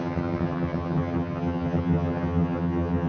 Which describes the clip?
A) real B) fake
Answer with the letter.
B